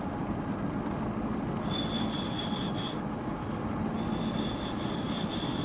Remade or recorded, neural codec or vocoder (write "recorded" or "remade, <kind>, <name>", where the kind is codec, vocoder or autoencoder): recorded